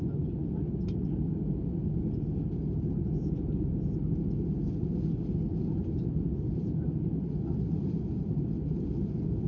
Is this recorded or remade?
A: recorded